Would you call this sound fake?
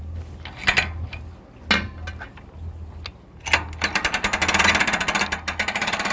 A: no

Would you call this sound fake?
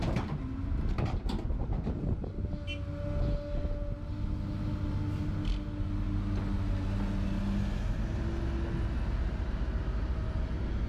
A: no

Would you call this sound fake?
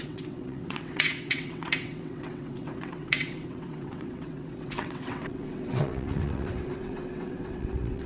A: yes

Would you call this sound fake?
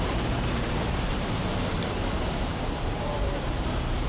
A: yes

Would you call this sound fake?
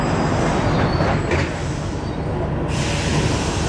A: no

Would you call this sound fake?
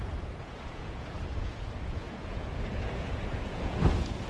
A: yes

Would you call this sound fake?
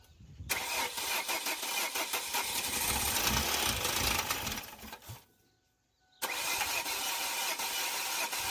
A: no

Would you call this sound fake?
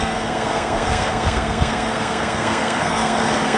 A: yes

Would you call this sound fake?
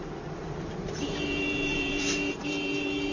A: yes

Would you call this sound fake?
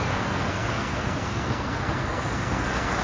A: yes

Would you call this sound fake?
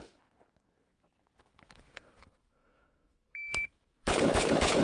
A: yes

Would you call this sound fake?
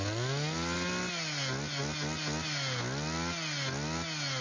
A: no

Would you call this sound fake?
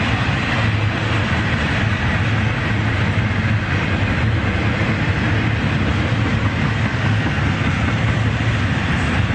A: no